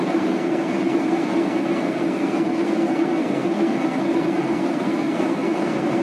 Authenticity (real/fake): fake